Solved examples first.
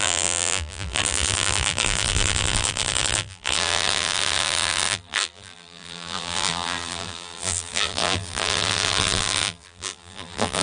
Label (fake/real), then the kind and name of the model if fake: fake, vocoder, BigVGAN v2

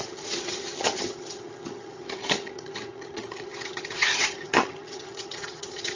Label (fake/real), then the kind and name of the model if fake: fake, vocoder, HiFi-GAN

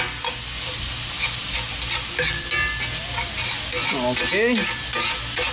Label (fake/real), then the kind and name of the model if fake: real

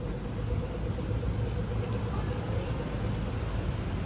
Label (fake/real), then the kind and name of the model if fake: real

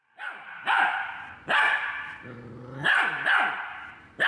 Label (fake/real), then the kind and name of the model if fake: fake, vocoder, BigVGAN v2